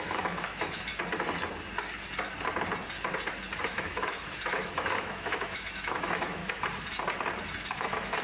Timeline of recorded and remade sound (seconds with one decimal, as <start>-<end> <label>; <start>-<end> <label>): 0.0-0.9 remade; 0.9-3.6 recorded; 3.6-6.4 remade; 6.4-7.6 recorded; 7.6-8.2 remade